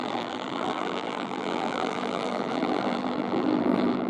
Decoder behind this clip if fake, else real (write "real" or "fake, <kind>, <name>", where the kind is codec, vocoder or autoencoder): fake, vocoder, BigVGAN v2